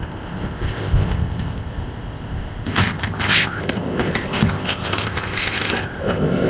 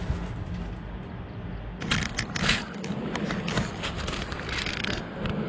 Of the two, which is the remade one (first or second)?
first